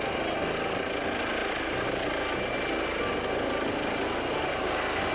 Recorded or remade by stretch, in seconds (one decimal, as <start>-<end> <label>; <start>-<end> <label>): 0.0-5.1 recorded